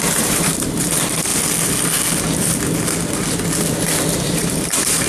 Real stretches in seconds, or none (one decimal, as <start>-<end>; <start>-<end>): 1.3-4.2